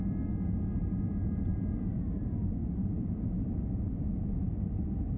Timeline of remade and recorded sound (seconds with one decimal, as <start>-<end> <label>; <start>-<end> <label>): 0.0-1.5 recorded; 1.5-2.2 remade; 2.2-2.6 recorded; 2.6-3.3 remade; 3.3-5.2 recorded